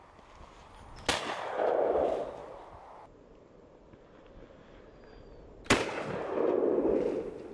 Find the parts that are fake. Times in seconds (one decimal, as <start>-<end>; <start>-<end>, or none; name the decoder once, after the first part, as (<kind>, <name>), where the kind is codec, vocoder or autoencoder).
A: none